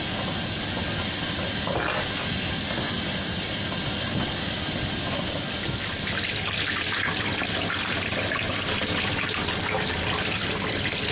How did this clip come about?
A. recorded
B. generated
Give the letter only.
A